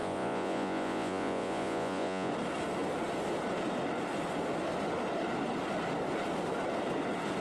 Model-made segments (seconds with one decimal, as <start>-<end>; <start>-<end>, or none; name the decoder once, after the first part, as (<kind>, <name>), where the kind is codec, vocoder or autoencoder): 0.0-2.3 (vocoder, Vocos)